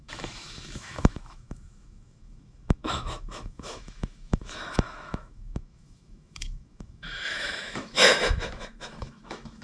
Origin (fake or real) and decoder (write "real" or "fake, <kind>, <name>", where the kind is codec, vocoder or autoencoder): fake, autoencoder, DAC-VAE